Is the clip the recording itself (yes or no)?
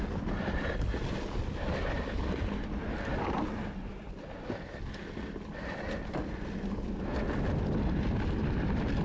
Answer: yes